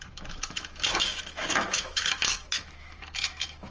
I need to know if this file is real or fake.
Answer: fake